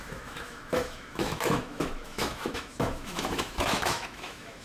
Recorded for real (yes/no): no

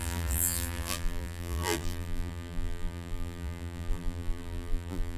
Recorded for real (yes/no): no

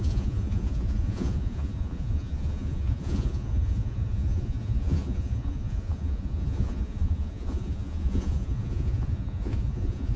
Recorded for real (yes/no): no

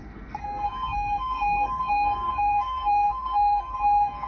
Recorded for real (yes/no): no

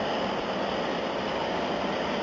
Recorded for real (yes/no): no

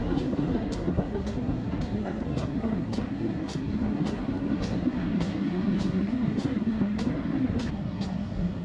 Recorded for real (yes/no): no